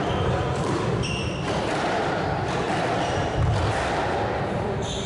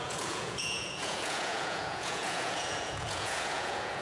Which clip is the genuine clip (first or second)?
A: first